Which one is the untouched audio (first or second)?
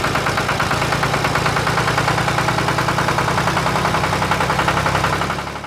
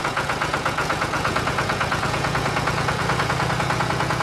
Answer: first